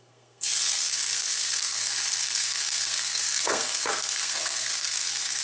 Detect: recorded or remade remade